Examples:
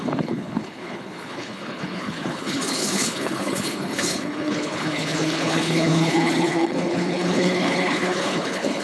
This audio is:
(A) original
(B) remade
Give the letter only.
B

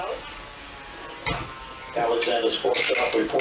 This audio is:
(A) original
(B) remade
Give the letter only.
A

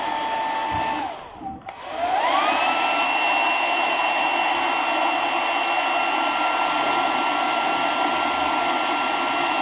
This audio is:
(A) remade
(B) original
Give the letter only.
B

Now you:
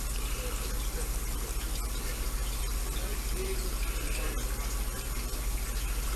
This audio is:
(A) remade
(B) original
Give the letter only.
B